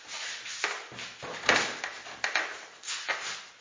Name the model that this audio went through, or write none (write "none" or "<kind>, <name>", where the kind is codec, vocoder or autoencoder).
none